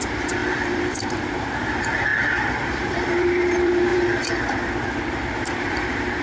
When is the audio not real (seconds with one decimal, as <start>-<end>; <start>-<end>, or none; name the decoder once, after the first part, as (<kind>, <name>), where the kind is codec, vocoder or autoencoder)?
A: 0.0-6.2 (vocoder, BigVGAN v2)